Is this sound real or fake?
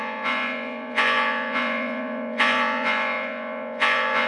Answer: fake